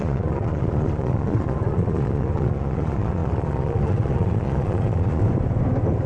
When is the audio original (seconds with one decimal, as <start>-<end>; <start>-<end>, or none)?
5.2-6.1